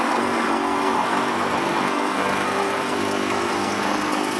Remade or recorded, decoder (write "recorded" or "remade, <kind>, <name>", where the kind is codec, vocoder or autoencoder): remade, codec, SNAC